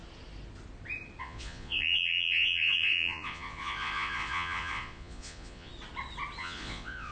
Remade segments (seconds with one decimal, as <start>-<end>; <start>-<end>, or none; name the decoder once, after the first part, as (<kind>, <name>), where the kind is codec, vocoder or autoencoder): 1.2-5.7 (vocoder, Vocos); 6.4-7.1